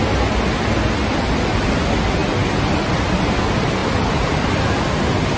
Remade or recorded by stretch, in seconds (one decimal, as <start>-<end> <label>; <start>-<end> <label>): 0.0-3.8 recorded; 3.8-4.6 remade; 4.6-5.4 recorded